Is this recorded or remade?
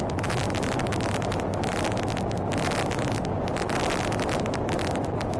recorded